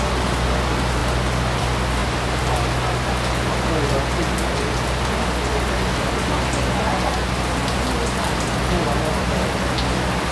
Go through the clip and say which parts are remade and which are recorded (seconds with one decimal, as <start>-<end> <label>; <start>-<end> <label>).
0.0-10.3 recorded